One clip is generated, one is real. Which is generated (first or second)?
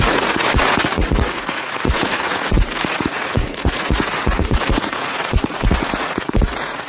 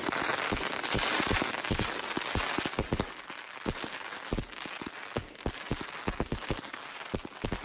first